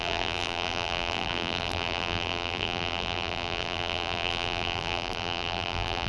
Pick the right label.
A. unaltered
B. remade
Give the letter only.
B